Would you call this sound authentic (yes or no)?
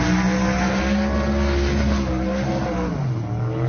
yes